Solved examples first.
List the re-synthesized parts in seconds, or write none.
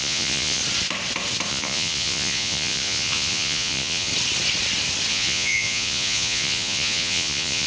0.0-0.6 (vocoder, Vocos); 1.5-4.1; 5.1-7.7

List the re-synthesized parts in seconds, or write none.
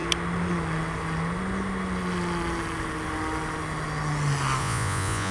4.6-5.3 (vocoder, Vocos)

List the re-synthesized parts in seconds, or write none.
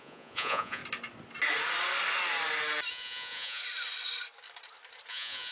0.0-0.8 (vocoder, Vocos); 2.9-3.6; 5.1-5.5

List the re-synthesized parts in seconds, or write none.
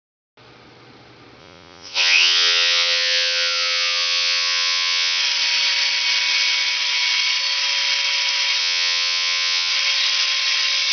1.4-5.2 (vocoder, Vocos); 8.6-9.7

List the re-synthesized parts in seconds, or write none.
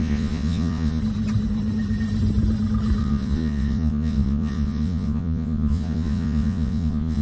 0.0-1.0 (vocoder, Vocos); 3.0-7.2